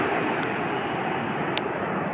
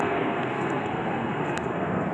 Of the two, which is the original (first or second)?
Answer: first